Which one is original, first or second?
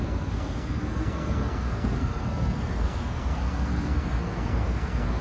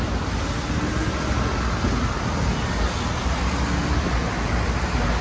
second